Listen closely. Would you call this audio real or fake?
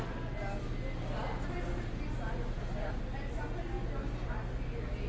real